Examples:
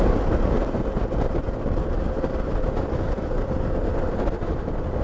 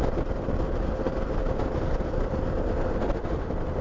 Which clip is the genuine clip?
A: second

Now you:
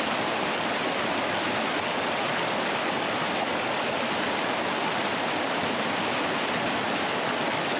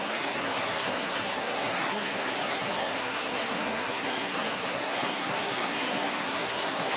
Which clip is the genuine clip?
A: first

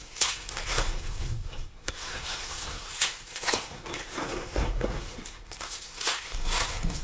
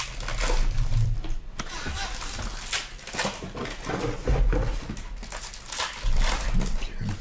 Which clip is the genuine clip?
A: second